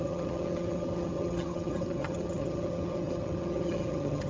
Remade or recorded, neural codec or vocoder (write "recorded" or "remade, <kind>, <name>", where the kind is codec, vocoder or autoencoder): remade, vocoder, HiFi-GAN